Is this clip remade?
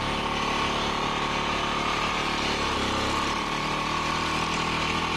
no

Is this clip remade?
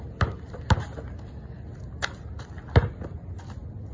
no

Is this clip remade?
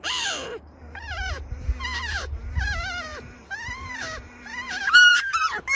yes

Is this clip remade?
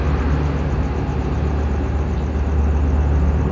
no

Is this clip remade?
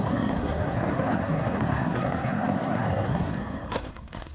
yes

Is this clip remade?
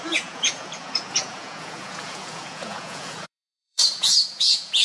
yes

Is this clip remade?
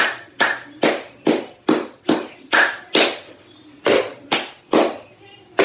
yes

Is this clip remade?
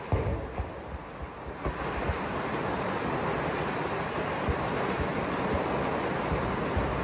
no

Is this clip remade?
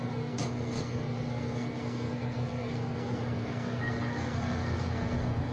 yes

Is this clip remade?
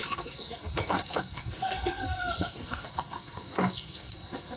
yes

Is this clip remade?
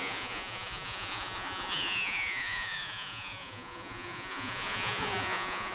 yes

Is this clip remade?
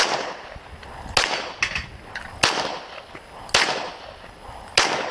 no